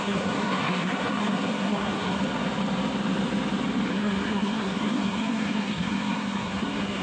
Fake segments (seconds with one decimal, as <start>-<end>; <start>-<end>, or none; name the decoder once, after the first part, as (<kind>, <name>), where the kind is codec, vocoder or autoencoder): 0.0-2.2 (codec, SNAC); 3.9-7.0